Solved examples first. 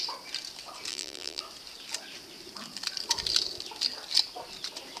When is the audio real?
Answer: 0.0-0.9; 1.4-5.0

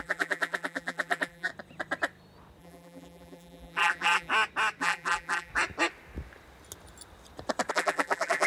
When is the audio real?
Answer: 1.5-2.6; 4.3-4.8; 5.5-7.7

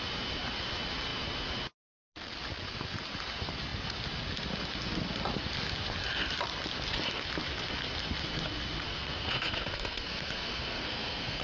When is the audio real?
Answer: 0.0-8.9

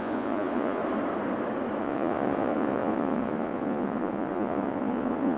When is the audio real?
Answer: 0.8-1.8